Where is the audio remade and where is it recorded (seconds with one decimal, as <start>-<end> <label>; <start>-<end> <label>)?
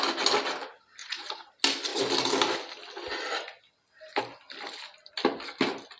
0.0-1.0 recorded; 1.0-1.5 remade; 1.5-6.0 recorded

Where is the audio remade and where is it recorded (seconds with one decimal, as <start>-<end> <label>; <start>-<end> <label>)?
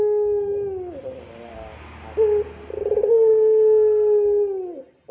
0.0-5.1 recorded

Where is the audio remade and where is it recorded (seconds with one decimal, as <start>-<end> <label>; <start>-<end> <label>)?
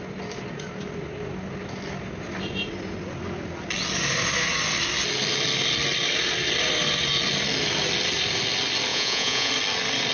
0.0-8.9 recorded; 8.9-9.5 remade; 9.5-10.1 recorded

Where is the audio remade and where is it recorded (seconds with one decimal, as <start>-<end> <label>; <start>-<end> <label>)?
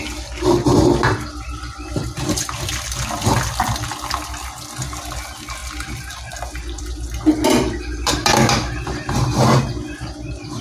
0.0-10.6 recorded